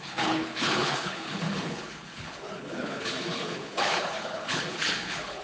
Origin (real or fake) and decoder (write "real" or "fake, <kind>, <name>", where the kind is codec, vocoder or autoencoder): fake, codec, HILCodec